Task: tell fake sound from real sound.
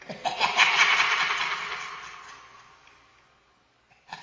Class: real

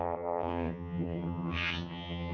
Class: fake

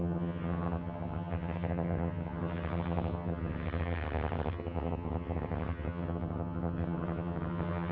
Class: fake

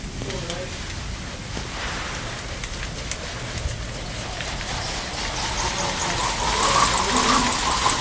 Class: real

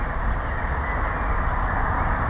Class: real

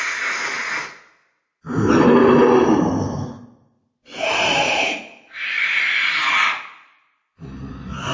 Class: real